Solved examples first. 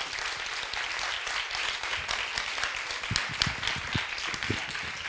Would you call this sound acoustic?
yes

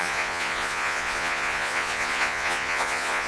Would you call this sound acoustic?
no